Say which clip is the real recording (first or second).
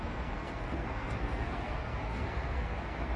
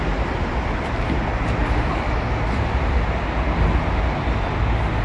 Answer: second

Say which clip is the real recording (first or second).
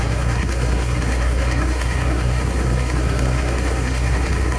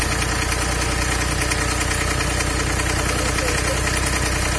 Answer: second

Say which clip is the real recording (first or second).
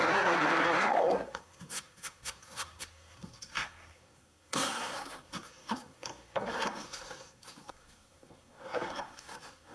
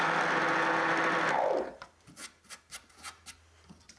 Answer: second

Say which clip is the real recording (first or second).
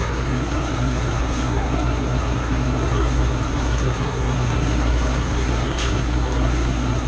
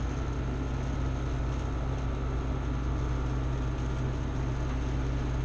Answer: second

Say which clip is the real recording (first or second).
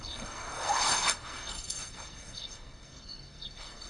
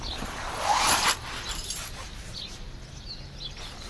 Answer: second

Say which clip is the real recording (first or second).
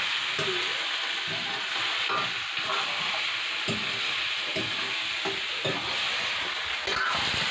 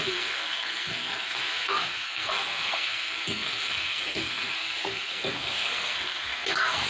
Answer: first